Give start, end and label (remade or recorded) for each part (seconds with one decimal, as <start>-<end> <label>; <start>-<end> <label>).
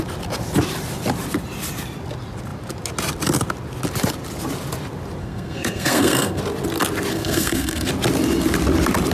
0.0-5.2 recorded; 5.2-6.4 remade; 6.4-7.1 recorded; 7.1-7.9 remade; 7.9-9.1 recorded